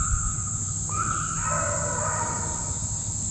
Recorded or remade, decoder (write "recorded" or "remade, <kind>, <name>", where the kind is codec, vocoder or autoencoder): recorded